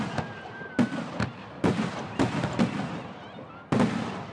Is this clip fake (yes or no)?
no